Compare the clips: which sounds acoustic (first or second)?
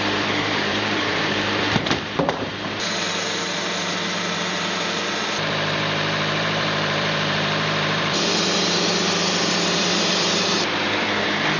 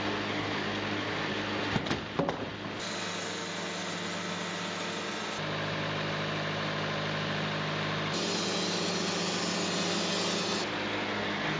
second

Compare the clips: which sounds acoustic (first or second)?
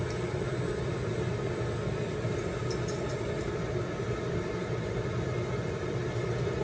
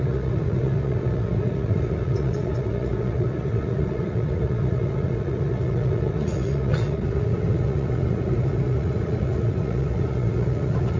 first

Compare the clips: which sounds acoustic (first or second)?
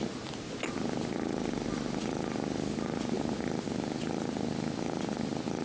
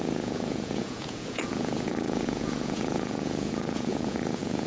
first